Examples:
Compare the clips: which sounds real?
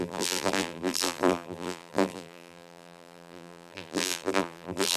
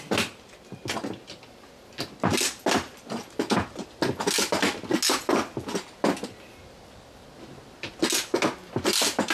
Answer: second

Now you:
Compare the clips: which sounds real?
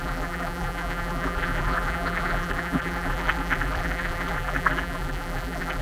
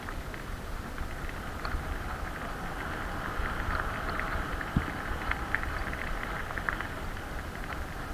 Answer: second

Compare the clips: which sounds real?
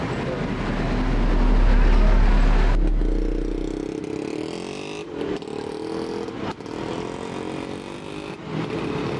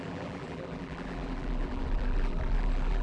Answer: first